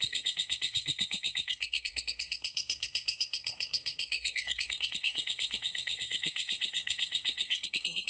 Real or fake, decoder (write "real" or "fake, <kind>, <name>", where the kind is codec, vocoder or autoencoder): fake, codec, SNAC